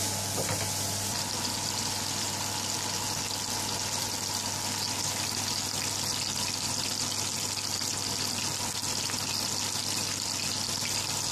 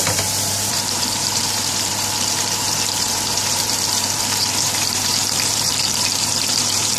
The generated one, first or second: second